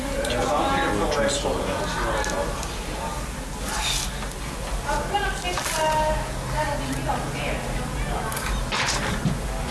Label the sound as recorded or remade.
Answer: recorded